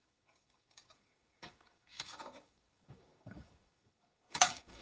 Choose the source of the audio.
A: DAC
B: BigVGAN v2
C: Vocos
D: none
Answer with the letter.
A